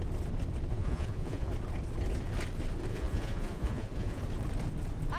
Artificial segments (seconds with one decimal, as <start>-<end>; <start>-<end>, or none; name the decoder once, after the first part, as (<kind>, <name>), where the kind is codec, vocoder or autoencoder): 0.7-1.5 (vocoder, Vocos); 2.9-4.2